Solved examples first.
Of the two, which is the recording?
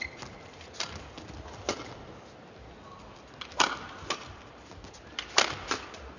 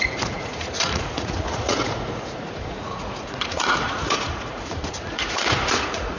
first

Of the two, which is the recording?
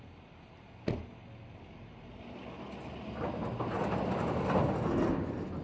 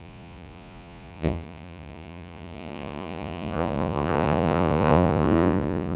first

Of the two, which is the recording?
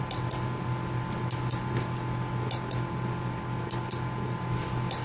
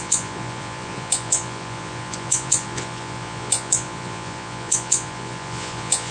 first